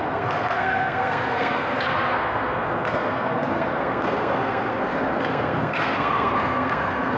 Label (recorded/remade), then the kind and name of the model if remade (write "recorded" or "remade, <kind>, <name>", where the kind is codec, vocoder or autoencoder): remade, codec, SNAC